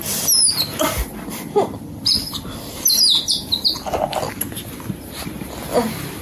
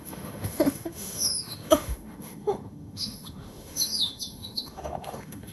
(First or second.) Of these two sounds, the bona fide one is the first